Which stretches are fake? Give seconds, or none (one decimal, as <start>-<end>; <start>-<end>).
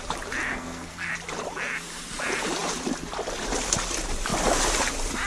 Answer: 0.5-1.1